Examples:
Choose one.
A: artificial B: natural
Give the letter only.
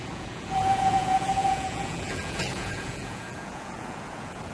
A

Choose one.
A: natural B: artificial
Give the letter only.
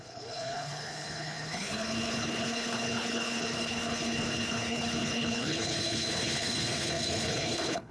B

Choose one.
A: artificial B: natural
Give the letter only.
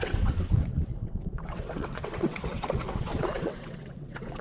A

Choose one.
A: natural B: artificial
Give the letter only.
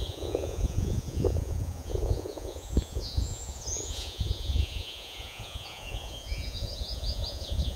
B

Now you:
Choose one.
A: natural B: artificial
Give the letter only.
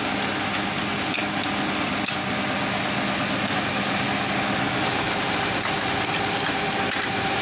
A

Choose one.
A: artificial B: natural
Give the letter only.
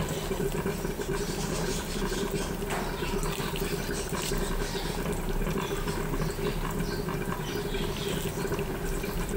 B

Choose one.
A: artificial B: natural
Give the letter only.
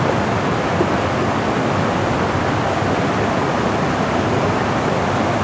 B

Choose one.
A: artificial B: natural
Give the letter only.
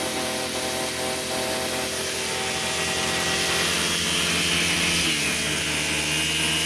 B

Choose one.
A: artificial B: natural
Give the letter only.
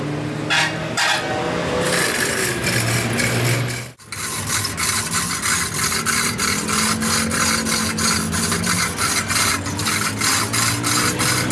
B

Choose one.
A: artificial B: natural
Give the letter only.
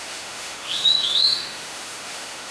A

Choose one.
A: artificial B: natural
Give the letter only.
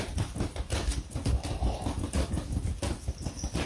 B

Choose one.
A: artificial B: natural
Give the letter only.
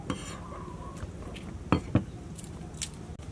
B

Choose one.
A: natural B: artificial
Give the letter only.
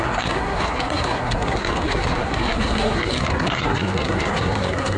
B